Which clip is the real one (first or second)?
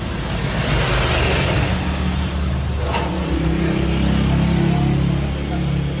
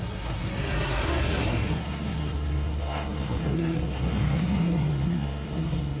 first